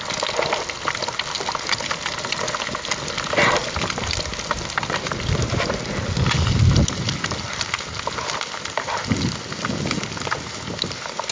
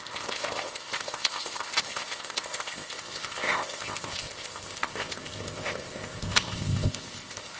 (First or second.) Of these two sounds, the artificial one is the second